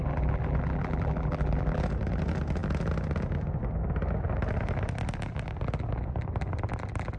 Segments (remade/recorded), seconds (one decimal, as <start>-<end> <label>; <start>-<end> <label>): 0.0-1.8 remade; 1.8-7.2 recorded